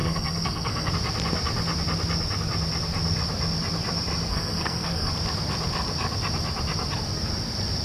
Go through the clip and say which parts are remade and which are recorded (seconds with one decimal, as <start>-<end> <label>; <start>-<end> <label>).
0.0-0.9 remade; 0.9-4.3 recorded; 4.3-5.1 remade; 5.1-7.8 recorded